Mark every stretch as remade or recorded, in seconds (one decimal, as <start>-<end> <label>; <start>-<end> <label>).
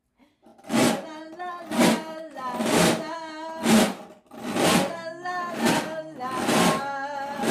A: 0.0-7.5 recorded